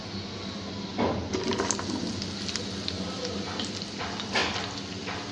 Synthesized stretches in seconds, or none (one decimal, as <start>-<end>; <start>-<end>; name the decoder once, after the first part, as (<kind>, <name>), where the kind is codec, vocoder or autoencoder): none